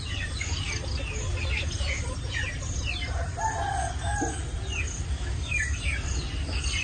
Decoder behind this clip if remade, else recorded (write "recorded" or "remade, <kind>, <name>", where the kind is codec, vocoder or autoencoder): recorded